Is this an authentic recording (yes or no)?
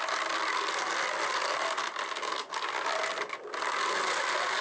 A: yes